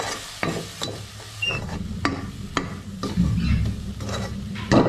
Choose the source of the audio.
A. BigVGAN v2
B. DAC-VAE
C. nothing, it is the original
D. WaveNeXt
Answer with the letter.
C